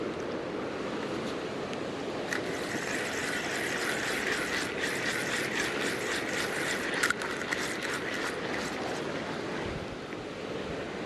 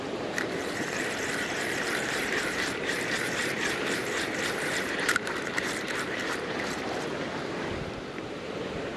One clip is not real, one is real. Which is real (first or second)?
first